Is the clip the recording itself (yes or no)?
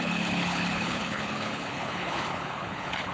no